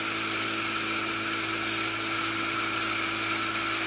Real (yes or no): yes